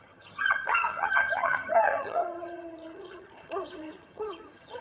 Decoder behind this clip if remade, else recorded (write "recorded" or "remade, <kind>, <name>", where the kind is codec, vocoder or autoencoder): remade, vocoder, HiFi-GAN